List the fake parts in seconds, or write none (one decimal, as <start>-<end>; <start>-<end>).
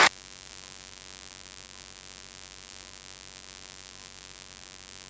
0.0-0.5